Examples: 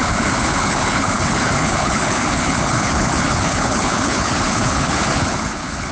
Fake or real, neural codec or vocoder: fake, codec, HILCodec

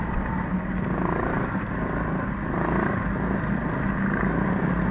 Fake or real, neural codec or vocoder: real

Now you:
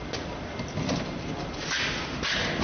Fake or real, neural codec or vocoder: real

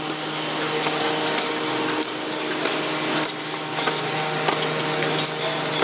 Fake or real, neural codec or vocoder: real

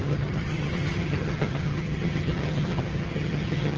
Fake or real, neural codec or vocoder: fake, vocoder, HiFi-GAN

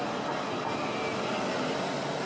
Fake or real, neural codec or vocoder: real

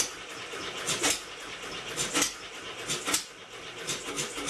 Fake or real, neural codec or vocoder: real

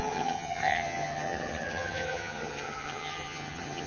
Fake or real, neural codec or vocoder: fake, vocoder, HiFi-GAN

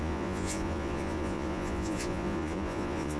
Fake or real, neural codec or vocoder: fake, vocoder, Vocos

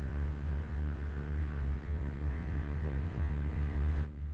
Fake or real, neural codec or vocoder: fake, vocoder, WaveNeXt